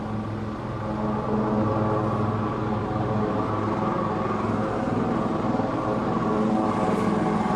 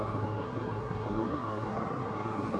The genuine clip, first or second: first